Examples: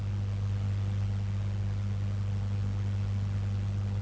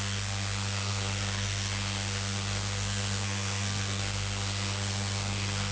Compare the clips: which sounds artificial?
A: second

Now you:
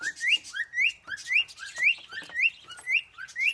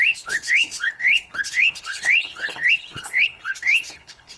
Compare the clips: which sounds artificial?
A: second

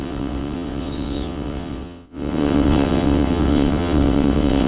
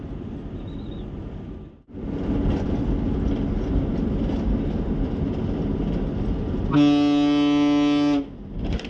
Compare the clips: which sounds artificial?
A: first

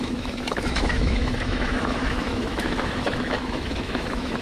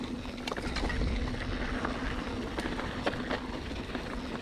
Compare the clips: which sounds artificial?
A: first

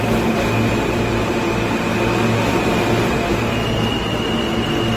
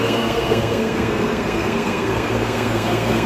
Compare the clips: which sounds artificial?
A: second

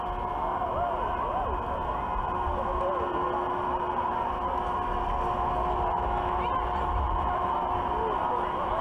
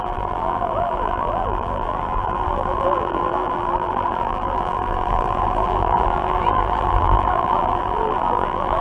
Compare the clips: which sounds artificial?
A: second